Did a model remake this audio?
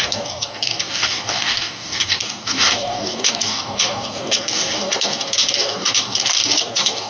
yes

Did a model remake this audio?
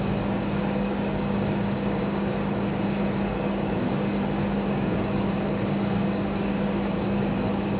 yes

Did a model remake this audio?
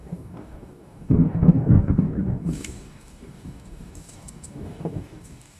yes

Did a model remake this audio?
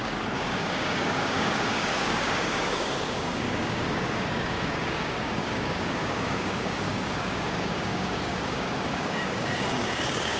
yes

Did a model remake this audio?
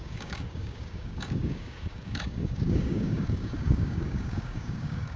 yes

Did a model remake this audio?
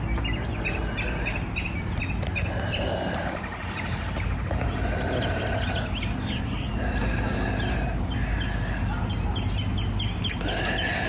no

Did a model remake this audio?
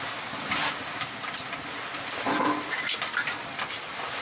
no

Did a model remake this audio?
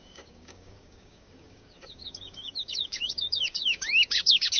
yes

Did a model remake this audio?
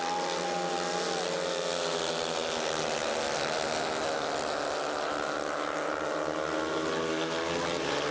no